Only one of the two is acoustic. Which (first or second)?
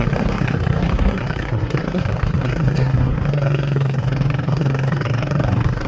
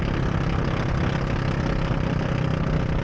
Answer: second